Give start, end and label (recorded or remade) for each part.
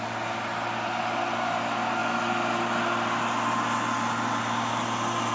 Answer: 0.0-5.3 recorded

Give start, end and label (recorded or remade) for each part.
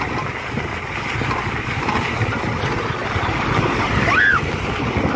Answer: 0.0-5.2 recorded